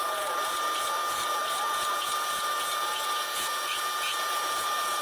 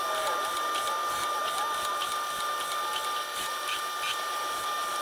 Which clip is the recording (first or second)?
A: second